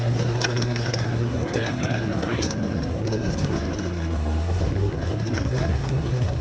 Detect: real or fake fake